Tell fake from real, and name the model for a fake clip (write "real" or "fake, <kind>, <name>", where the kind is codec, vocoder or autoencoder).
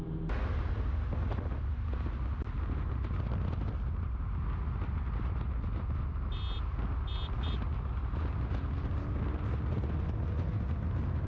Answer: real